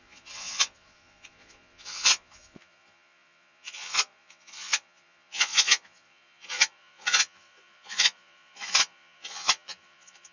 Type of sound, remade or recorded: remade